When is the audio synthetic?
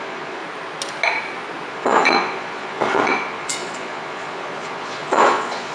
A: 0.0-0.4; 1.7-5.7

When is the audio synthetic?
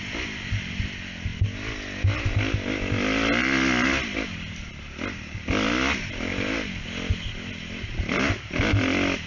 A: none